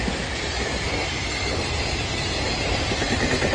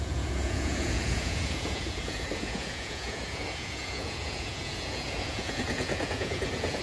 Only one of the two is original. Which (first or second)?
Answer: first